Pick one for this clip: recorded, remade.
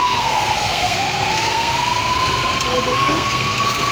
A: remade